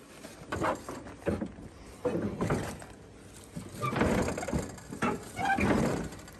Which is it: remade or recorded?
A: recorded